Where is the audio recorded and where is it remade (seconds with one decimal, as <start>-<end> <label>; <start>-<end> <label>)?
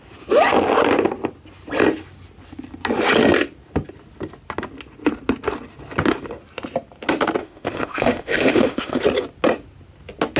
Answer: 0.0-7.4 recorded; 7.4-9.0 remade; 9.0-10.4 recorded